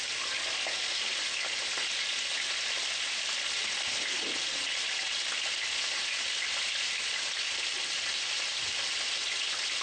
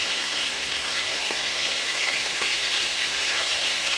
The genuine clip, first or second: first